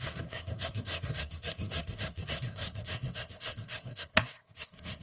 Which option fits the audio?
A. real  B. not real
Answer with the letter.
B